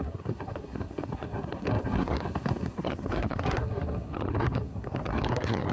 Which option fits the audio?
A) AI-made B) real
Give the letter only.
A